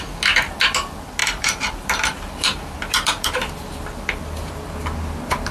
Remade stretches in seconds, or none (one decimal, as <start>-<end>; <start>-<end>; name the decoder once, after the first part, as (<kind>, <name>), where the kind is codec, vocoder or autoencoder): 1.2-4.5 (vocoder, BigVGAN v2)